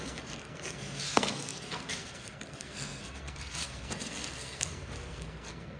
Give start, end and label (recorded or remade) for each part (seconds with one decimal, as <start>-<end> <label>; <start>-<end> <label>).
0.0-5.8 remade